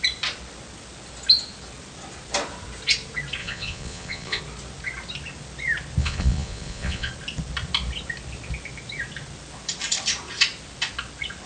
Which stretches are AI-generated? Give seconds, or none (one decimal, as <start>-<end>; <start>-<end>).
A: 3.4-4.4; 6.0-7.1